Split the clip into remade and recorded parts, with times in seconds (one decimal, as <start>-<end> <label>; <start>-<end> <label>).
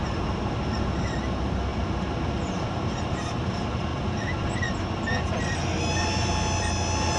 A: 0.0-7.2 recorded